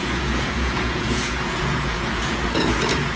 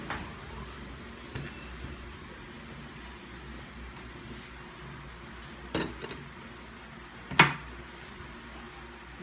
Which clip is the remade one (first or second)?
first